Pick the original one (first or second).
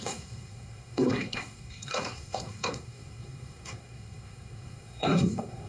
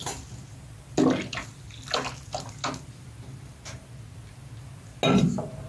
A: second